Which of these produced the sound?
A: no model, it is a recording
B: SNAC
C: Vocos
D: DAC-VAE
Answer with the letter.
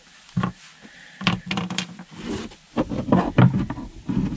A